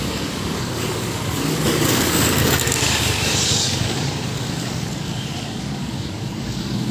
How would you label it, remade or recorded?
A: remade